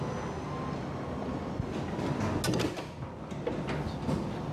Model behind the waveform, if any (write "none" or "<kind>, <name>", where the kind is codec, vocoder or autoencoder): none